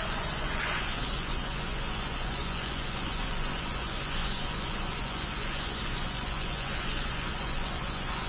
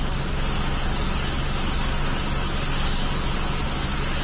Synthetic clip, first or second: first